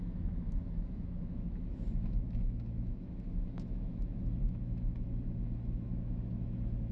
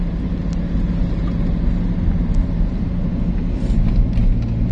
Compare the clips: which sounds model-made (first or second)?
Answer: first